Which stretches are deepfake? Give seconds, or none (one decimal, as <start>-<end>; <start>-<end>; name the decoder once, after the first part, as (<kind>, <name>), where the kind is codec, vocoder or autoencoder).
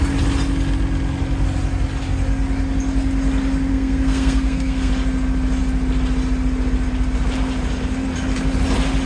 3.7-4.9 (codec, SNAC)